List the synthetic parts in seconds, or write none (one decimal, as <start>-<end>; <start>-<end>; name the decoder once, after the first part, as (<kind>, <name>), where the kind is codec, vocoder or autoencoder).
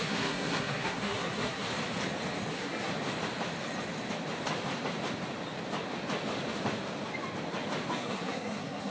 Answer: 0.0-1.7 (codec, SNAC); 2.5-2.9; 7.9-8.9